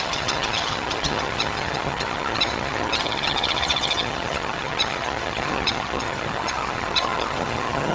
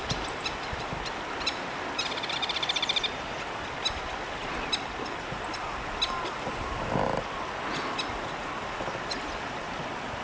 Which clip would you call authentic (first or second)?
second